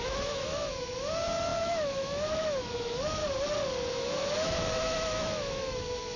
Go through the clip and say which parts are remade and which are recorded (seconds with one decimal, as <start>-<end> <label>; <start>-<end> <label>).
0.0-3.2 remade; 3.2-3.9 recorded; 3.9-6.2 remade